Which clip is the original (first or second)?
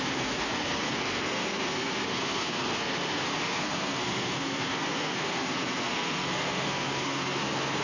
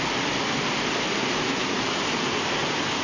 second